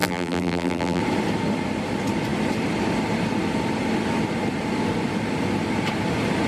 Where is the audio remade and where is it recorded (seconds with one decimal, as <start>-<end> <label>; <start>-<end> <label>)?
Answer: 0.0-1.0 remade; 1.0-6.5 recorded